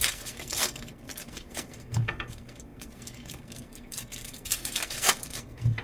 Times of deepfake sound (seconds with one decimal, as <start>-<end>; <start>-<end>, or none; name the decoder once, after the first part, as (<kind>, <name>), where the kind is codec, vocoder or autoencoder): 0.0-5.8 (codec, SNAC)